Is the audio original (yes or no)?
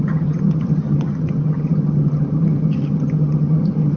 no